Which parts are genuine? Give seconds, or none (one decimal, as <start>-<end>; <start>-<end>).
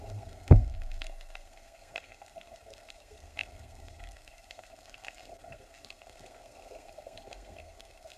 none